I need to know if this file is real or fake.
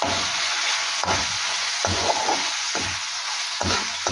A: fake